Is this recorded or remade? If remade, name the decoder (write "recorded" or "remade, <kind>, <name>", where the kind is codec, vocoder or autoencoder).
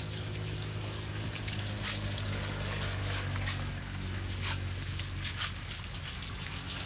remade, codec, DAC